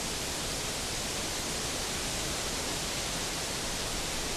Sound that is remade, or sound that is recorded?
recorded